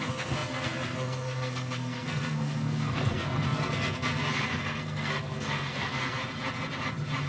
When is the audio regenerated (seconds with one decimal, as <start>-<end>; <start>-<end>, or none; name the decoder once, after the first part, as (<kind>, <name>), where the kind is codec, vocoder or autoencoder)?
0.0-6.2 (codec, SNAC)